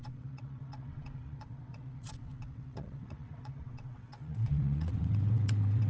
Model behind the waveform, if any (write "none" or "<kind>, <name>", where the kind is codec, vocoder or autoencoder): vocoder, WaveNeXt